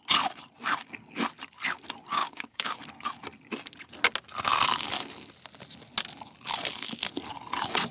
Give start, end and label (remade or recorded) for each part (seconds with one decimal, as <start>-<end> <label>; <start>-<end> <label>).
0.0-2.2 recorded; 2.2-2.8 remade; 2.8-7.9 recorded